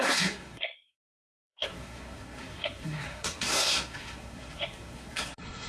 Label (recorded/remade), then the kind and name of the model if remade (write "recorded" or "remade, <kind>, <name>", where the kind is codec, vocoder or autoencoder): remade, codec, SNAC